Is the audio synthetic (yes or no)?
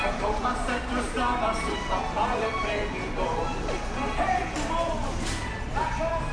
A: no